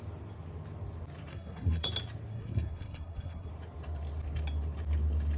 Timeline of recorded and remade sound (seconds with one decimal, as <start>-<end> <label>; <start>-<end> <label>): 0.0-1.3 recorded; 1.3-1.9 remade; 1.9-2.3 recorded; 2.3-3.5 remade; 3.5-5.4 recorded